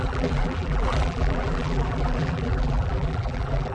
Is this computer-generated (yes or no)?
yes